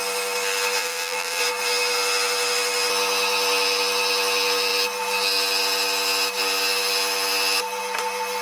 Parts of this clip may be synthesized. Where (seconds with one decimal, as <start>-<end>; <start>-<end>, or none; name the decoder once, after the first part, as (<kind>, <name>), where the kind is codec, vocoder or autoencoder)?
0.8-1.4 (vocoder, BigVGAN v2)